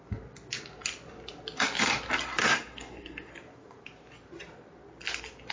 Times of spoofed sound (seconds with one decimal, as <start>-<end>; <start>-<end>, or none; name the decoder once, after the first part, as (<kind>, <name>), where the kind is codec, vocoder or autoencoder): 2.4-3.3 (codec, SNAC)